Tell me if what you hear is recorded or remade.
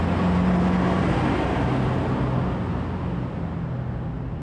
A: recorded